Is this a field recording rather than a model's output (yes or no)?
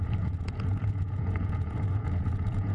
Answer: no